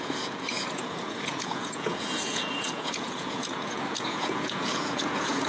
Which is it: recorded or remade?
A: remade